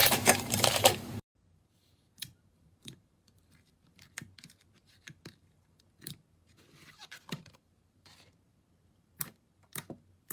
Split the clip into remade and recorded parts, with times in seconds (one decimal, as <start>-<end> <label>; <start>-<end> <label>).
0.0-10.3 remade